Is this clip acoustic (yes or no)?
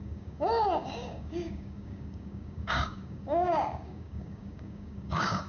no